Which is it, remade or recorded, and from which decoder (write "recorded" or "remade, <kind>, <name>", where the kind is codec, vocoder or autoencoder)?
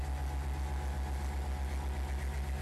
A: recorded